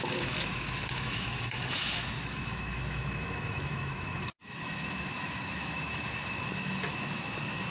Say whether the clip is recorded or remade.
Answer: remade